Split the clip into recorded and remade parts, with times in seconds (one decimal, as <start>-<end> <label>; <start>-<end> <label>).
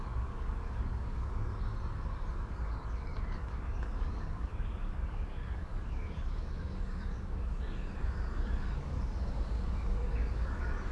0.0-1.5 remade; 1.5-2.3 recorded; 2.3-10.9 remade